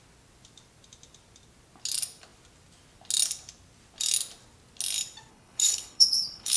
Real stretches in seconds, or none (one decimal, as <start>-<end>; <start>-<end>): 0.0-5.3